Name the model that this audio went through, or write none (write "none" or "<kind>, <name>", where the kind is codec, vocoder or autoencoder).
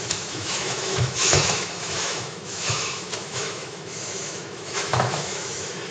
autoencoder, DAC-VAE